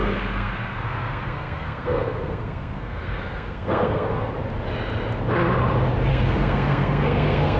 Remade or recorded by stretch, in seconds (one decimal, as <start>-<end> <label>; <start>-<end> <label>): 0.0-4.3 remade; 4.3-6.1 recorded; 6.1-7.6 remade